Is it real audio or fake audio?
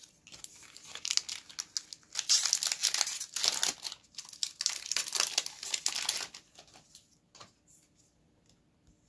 real